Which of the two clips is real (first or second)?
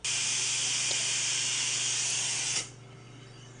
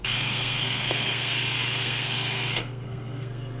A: first